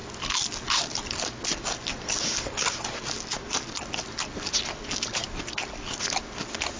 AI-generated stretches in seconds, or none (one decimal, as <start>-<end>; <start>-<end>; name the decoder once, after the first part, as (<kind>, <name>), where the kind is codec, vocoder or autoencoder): none